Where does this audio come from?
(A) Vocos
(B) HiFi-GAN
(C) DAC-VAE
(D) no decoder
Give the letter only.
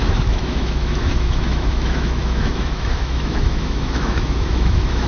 C